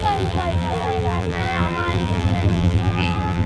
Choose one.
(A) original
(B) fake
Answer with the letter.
B